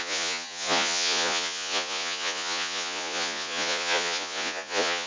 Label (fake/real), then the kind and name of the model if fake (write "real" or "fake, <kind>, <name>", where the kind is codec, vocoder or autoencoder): fake, vocoder, Vocos